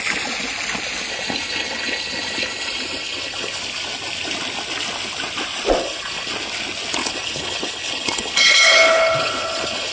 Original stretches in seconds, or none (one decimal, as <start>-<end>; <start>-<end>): 0.0-1.1; 3.6-5.8; 6.3-7.0

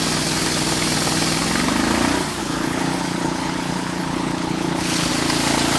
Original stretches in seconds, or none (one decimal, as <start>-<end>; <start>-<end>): 0.0-2.4; 5.1-5.8

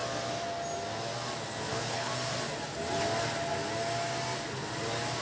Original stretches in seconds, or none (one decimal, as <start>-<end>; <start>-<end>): 0.0-1.7; 2.1-5.2